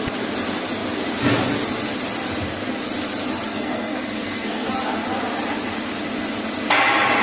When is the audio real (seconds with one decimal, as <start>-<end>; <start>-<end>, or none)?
0.0-3.5; 4.7-7.2